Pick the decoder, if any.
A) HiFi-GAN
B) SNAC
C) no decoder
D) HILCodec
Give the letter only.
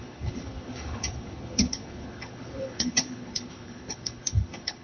D